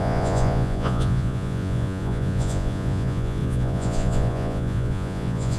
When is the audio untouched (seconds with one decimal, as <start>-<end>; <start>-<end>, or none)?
none